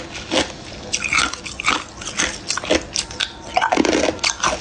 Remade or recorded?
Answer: recorded